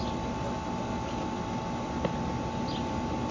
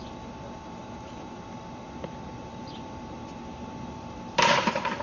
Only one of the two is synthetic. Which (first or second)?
second